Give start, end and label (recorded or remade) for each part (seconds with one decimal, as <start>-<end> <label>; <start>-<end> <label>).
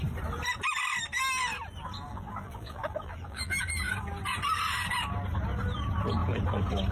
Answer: 0.0-2.1 recorded; 2.1-3.6 remade; 3.6-6.9 recorded